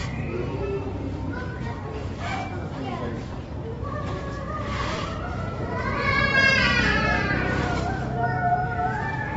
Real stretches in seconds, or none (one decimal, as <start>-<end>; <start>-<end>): 1.8-2.3; 6.6-7.1; 7.6-9.4